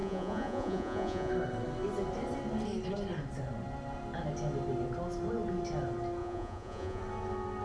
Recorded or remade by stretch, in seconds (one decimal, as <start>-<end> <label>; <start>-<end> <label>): 0.0-1.3 remade; 1.3-6.2 recorded; 6.2-7.0 remade; 7.0-7.6 recorded